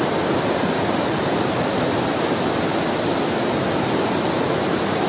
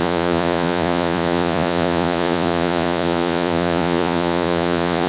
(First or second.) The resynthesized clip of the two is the second